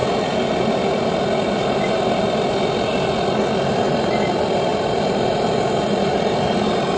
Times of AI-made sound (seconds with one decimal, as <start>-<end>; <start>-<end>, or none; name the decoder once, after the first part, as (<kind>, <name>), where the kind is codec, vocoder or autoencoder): none